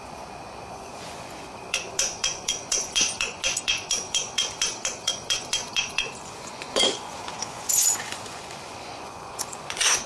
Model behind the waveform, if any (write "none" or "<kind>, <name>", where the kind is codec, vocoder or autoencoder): vocoder, Vocos